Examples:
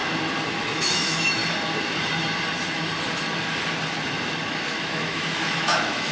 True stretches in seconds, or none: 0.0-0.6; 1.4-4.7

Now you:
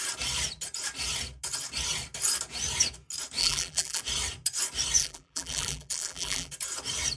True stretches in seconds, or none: 0.0-3.4; 4.0-5.0; 6.5-7.2

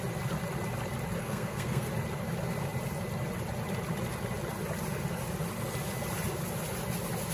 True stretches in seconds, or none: 0.0-1.2; 1.9-7.3